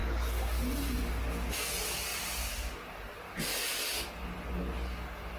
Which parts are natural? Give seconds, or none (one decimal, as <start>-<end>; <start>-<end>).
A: 0.0-2.1; 3.8-5.4